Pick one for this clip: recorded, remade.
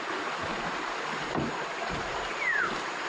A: recorded